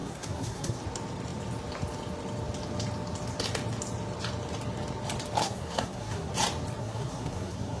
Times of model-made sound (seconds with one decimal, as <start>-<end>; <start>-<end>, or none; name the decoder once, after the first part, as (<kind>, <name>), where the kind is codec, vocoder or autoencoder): 0.0-0.8 (codec, SNAC); 5.4-6.3; 6.8-7.8